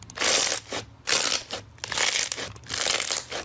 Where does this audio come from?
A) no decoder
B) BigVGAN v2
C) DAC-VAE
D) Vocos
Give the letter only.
A